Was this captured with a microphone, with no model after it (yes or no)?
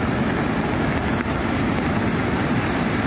yes